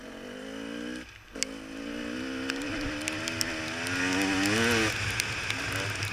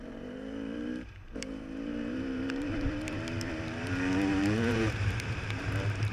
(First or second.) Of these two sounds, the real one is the first